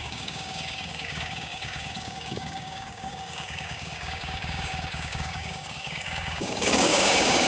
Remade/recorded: remade